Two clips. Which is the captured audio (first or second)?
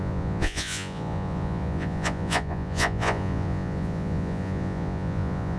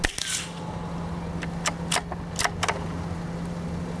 second